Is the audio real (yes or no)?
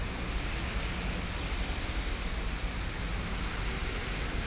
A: yes